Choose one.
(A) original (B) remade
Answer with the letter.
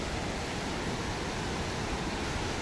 A